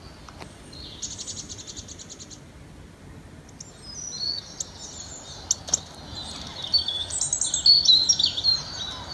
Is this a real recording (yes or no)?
yes